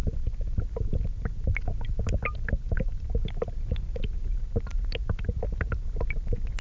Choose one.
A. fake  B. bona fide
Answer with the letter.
B